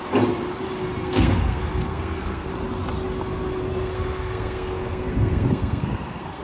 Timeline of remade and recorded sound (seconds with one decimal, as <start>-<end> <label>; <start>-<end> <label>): 0.0-1.0 recorded; 1.0-2.5 remade; 2.5-3.6 recorded; 3.6-6.4 remade